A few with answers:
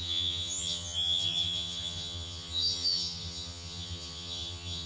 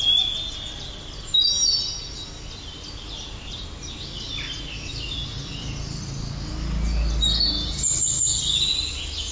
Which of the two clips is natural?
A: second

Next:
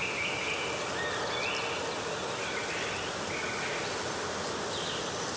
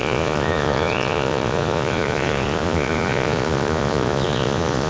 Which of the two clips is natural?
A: first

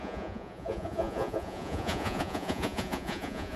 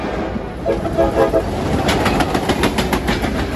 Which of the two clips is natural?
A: second